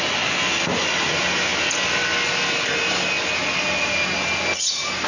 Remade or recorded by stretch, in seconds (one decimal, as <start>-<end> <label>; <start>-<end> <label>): 0.0-5.1 recorded